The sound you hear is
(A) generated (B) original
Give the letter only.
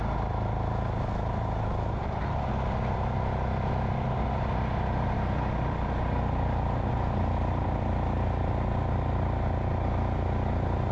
B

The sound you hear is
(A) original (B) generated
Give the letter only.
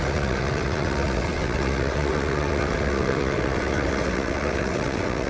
B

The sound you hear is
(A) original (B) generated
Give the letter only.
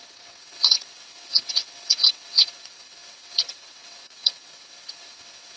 B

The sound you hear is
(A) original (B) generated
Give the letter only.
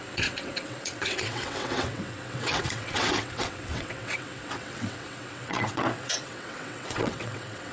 B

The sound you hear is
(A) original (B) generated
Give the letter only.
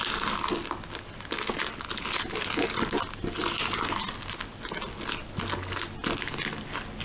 A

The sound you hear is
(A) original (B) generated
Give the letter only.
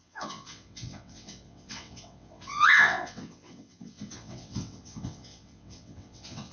B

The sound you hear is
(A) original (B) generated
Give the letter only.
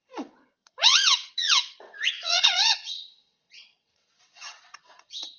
B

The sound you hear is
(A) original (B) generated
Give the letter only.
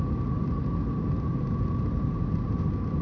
A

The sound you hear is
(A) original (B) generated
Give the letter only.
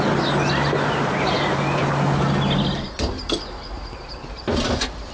A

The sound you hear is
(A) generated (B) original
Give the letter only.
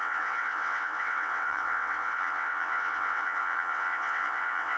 A